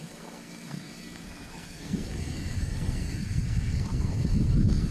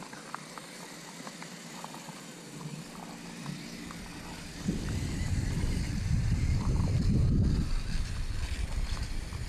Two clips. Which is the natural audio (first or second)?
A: second